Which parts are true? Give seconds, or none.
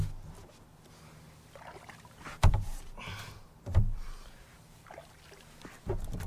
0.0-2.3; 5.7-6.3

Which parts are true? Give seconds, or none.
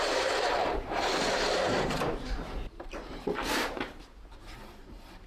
0.0-0.6; 3.8-5.3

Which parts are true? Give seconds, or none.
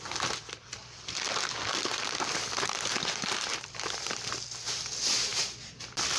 0.0-0.6; 4.3-5.3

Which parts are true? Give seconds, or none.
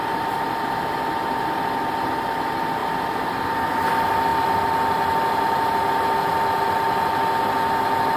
none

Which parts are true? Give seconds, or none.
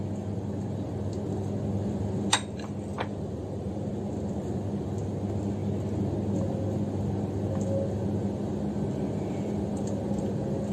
0.0-2.9; 3.9-10.7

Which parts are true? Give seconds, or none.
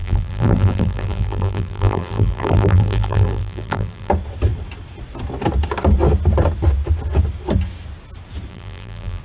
4.1-8.5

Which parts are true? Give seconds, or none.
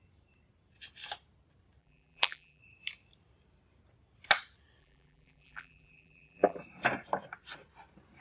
0.0-1.8; 2.6-4.8; 6.6-8.2